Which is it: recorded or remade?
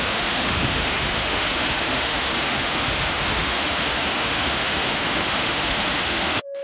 remade